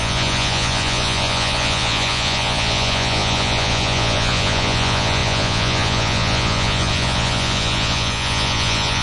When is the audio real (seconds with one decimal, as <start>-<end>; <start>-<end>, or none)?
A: none